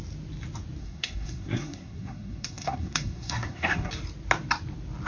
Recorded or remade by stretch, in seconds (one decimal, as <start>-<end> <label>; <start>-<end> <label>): 0.0-0.8 recorded; 0.8-3.9 remade; 3.9-5.1 recorded